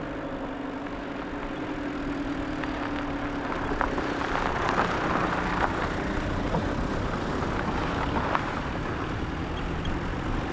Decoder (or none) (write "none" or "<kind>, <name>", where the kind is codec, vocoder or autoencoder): none